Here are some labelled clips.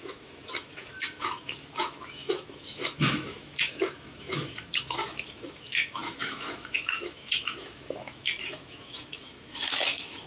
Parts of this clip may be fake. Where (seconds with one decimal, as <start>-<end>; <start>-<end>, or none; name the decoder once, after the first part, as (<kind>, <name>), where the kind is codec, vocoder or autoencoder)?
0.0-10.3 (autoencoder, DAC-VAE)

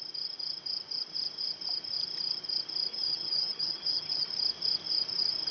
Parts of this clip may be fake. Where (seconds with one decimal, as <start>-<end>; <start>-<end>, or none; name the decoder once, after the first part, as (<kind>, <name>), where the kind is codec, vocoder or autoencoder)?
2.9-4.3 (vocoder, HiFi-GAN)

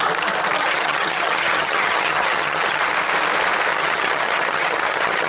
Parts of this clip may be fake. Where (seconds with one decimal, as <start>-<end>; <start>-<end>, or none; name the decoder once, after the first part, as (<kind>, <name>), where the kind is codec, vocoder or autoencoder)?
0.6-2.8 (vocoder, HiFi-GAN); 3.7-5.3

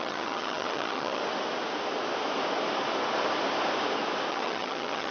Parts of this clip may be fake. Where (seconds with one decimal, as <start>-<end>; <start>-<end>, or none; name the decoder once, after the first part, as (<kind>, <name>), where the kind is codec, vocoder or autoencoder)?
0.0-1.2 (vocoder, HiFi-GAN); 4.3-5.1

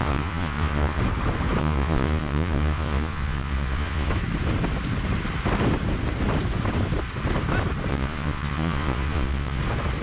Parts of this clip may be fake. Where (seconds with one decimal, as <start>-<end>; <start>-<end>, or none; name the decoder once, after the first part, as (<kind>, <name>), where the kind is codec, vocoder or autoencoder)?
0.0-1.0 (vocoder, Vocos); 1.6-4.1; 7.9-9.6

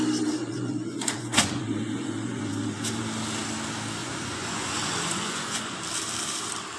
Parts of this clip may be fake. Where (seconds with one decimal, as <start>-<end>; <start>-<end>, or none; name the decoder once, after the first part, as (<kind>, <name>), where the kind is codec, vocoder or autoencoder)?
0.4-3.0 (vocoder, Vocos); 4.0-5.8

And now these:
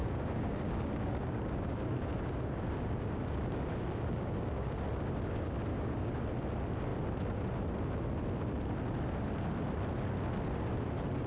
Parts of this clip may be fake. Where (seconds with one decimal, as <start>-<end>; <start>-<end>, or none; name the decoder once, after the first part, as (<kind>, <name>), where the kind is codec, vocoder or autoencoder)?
0.0-4.7 (codec, DAC); 5.7-6.2

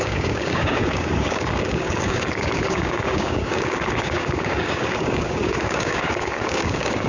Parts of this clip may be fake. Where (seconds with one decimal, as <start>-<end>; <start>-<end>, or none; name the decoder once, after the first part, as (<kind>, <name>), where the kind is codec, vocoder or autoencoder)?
0.0-7.1 (codec, DAC)